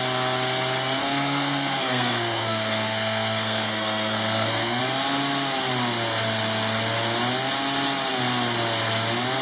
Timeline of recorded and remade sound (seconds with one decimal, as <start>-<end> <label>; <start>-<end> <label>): 0.0-1.0 recorded; 1.0-4.8 remade; 4.8-9.4 recorded

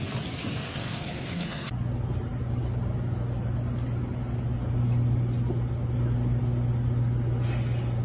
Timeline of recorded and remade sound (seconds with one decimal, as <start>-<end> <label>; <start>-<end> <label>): 0.0-0.5 recorded; 0.5-1.7 remade; 1.7-8.0 recorded

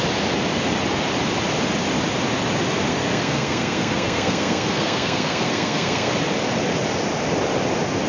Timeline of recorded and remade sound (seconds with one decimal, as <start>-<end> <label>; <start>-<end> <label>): 0.0-2.9 recorded; 2.9-6.1 remade; 6.1-8.1 recorded